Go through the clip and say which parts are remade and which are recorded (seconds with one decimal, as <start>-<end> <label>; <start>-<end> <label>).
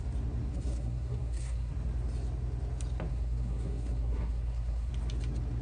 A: 0.0-0.5 recorded; 0.5-1.7 remade; 1.7-3.1 recorded; 3.1-4.9 remade; 4.9-5.6 recorded